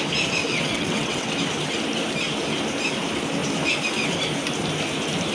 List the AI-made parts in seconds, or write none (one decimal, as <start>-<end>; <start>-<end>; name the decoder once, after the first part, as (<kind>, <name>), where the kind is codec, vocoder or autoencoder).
0.4-1.3 (vocoder, WaveNeXt)